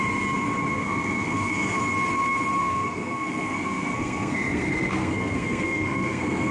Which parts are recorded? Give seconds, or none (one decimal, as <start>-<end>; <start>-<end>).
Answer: 0.0-0.7; 1.8-2.6